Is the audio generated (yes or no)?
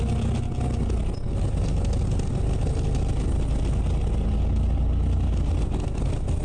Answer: no